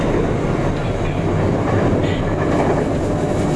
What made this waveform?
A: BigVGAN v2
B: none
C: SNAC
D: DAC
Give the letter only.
B